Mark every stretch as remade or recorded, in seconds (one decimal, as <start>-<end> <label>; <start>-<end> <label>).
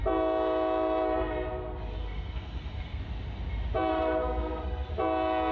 0.0-2.0 recorded; 2.0-3.0 remade; 3.0-3.9 recorded; 3.9-4.9 remade; 4.9-5.5 recorded